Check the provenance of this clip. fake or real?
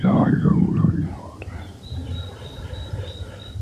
fake